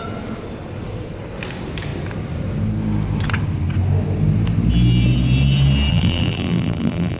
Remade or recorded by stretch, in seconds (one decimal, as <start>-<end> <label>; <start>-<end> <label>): 0.0-5.9 recorded; 5.9-7.2 remade